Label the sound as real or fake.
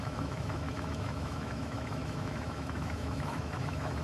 fake